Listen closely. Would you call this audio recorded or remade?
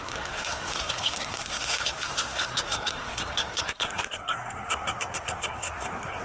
remade